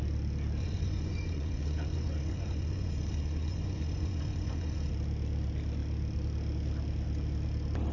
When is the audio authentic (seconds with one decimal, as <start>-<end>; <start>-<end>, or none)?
0.0-0.6; 4.9-7.9